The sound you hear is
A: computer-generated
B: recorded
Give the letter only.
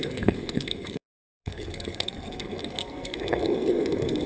A